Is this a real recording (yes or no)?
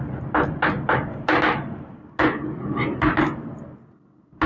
yes